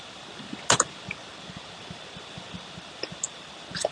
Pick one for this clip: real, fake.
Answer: real